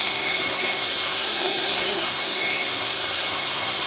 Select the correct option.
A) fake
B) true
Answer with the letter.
A